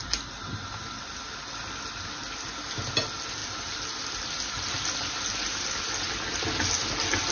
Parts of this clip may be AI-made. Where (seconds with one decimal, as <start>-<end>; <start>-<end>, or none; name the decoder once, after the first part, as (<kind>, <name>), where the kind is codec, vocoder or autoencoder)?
none